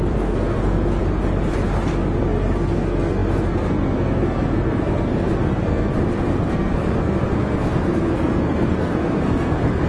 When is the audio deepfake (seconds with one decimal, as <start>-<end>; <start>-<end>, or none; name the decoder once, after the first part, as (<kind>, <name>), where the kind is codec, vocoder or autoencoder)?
0.0-1.0 (codec, SNAC); 2.2-5.9; 6.5-9.9